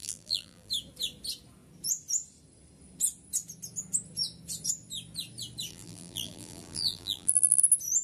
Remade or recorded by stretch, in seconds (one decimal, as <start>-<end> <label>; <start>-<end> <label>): 0.0-0.7 remade; 0.7-5.7 recorded; 5.7-7.6 remade; 7.6-8.0 recorded